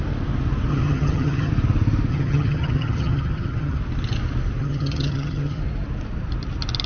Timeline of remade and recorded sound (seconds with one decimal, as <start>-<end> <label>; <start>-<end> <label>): 0.0-0.7 recorded; 0.7-1.5 remade; 1.5-2.1 recorded; 2.1-3.8 remade; 3.8-4.6 recorded; 4.6-5.6 remade; 5.6-6.9 recorded